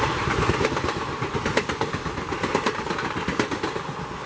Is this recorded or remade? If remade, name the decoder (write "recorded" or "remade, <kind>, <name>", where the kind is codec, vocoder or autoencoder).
recorded